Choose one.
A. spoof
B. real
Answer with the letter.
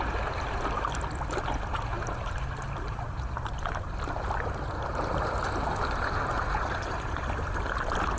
B